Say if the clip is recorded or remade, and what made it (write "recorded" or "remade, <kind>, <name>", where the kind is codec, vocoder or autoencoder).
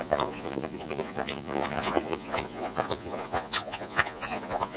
remade, vocoder, Vocos